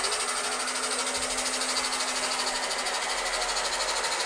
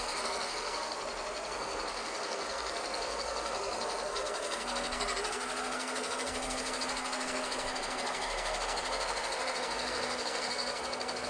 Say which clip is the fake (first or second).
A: second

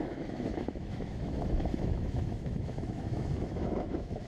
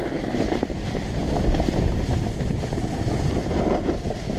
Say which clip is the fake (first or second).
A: first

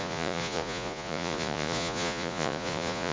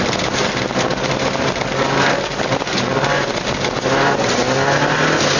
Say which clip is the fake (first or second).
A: first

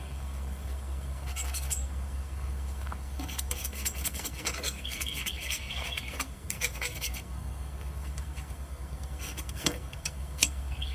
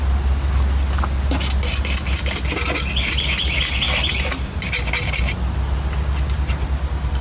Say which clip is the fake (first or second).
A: first